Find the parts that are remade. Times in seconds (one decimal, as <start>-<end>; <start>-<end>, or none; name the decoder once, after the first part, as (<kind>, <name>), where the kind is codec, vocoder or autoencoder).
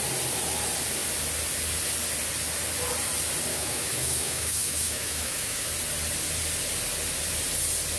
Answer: 3.5-5.7 (autoencoder, DAC-VAE)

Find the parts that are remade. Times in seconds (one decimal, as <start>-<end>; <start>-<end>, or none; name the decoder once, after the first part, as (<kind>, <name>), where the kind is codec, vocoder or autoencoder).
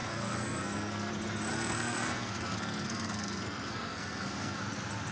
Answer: 0.0-1.1 (codec, SNAC); 1.5-4.6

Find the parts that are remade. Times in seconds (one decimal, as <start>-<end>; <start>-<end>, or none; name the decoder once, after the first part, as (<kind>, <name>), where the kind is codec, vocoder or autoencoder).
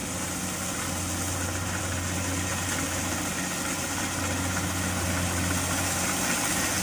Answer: none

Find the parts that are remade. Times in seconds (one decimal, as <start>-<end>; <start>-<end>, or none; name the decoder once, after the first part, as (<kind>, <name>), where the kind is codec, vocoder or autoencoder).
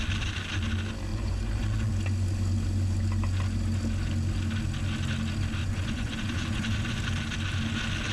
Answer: 1.1-1.9 (vocoder, Vocos); 5.6-7.0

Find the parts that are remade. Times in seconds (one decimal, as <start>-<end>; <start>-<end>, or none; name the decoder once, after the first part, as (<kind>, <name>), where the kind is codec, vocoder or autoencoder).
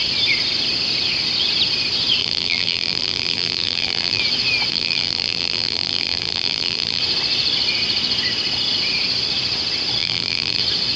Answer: 2.2-4.2 (vocoder, BigVGAN v2); 4.7-7.0; 10.0-10.6